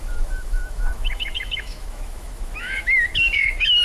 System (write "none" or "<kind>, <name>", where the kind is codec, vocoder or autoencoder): autoencoder, DAC-VAE